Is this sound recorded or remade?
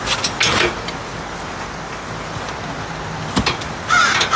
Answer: recorded